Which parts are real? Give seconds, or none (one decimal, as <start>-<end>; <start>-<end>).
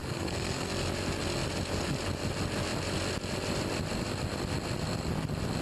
0.7-5.6